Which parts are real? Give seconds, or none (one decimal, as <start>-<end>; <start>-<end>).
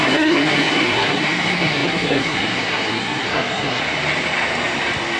3.8-5.2